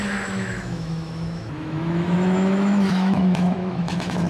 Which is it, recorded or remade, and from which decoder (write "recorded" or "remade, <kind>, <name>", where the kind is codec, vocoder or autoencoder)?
remade, autoencoder, DAC-VAE